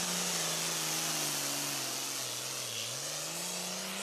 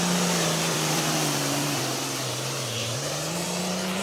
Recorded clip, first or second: first